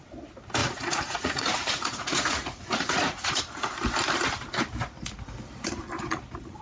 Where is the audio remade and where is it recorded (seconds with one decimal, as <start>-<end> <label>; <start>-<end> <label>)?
0.0-0.6 recorded; 0.6-3.4 remade; 3.4-6.6 recorded